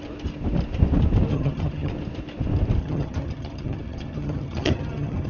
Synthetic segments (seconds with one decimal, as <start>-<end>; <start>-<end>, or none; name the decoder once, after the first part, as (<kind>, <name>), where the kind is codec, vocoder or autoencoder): 1.3-1.9 (vocoder, HiFi-GAN); 2.8-5.3